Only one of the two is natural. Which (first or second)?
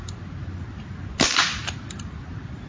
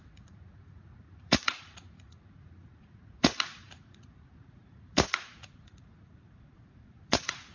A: first